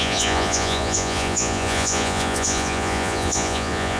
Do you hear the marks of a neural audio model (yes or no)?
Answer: yes